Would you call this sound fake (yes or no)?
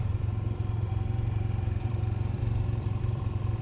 yes